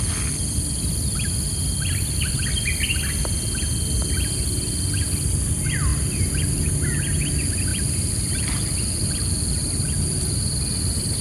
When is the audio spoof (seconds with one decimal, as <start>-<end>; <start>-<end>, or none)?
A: 5.9-6.7; 7.7-9.1